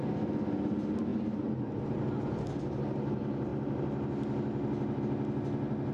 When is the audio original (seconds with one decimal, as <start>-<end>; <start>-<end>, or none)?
0.0-5.9